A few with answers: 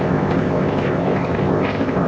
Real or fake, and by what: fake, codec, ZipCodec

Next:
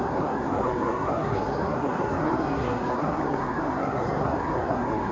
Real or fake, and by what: fake, codec, SNAC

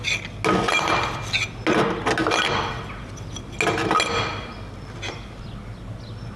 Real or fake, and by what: real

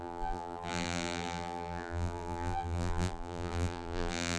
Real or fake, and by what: fake, vocoder, BigVGAN v2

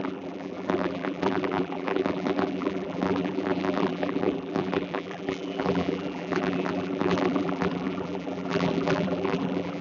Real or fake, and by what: fake, vocoder, BigVGAN v2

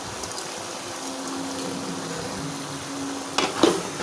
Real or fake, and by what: real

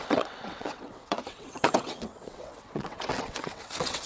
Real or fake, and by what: fake, vocoder, WaveNeXt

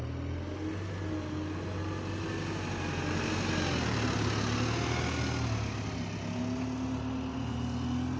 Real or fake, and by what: real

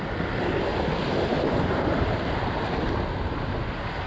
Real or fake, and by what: real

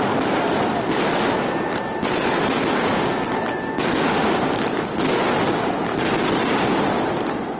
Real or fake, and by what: real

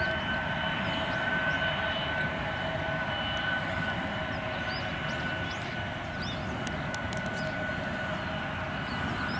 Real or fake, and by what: real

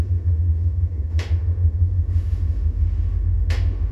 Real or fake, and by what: fake, autoencoder, DAC-VAE